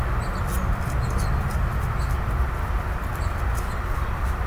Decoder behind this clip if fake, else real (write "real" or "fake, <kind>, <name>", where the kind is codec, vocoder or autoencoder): real